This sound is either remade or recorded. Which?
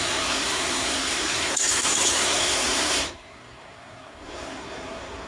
remade